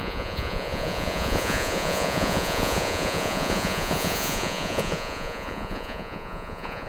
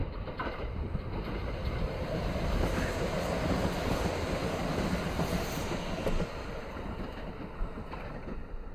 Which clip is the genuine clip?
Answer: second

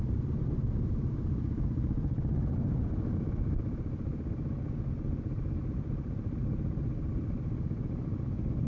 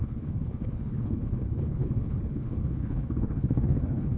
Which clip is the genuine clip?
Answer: first